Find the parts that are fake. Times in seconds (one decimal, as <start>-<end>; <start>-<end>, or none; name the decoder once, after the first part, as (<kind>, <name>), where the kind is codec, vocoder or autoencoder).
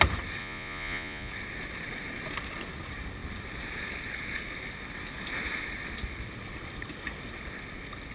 0.4-1.3 (vocoder, Vocos)